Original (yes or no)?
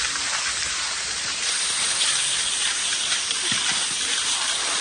yes